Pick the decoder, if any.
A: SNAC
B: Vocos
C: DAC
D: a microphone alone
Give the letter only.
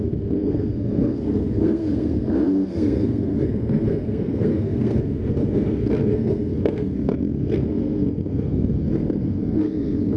A